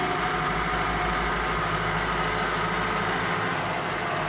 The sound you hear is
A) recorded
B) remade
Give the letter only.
A